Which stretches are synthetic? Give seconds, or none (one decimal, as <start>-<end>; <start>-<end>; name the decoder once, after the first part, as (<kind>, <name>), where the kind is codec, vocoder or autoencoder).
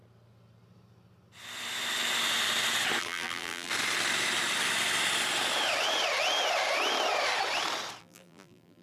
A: 3.0-3.7 (vocoder, BigVGAN v2); 8.0-8.8